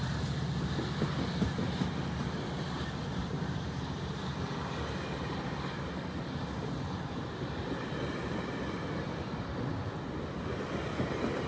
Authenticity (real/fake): real